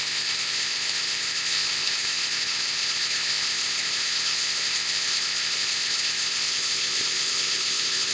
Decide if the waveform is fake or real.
fake